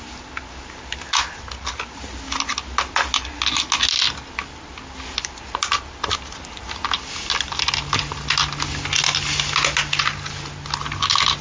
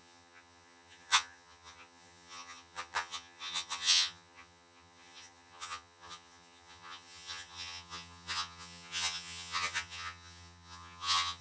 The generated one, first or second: second